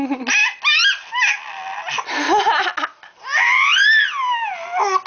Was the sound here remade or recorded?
recorded